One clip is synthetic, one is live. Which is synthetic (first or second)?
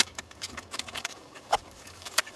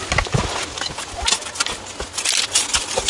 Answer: first